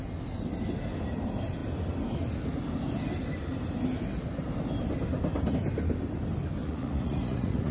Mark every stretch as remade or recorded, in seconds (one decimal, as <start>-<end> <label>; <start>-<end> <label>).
0.0-6.6 recorded; 6.6-7.7 remade